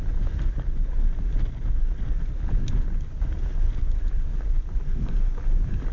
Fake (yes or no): no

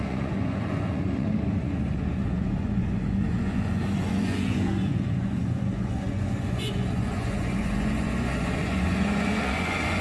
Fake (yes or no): yes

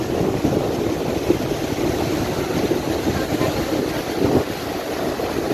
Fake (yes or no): no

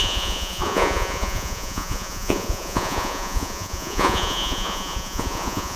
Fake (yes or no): yes